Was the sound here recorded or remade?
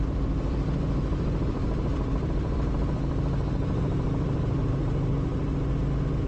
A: remade